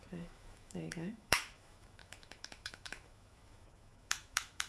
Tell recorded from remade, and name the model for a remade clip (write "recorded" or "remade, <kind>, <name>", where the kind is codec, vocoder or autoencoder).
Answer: remade, autoencoder, DAC-VAE